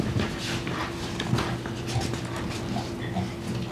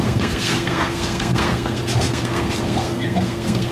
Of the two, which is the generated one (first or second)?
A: second